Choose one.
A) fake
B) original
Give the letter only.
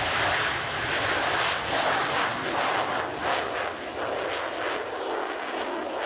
B